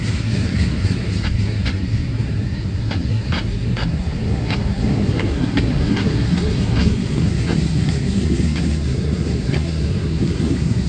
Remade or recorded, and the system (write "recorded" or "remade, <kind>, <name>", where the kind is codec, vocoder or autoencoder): remade, codec, SNAC